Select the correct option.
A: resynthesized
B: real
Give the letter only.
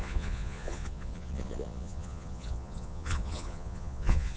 A